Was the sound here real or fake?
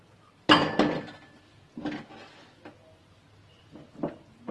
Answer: real